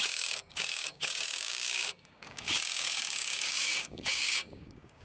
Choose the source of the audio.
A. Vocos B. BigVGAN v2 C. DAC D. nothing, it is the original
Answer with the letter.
C